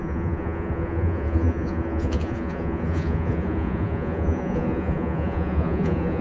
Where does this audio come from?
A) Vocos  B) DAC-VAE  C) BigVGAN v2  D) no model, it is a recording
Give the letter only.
A